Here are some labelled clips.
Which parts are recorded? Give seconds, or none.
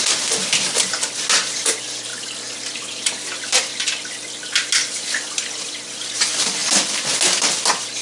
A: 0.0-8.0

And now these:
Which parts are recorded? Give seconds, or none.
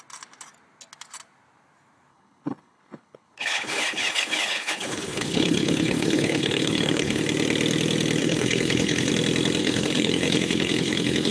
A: 0.0-2.1; 7.2-8.2; 9.1-9.6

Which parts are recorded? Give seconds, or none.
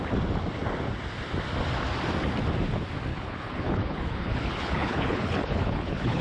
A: 0.0-3.1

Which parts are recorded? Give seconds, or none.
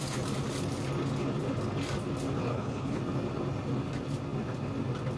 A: 0.0-2.5; 3.0-5.2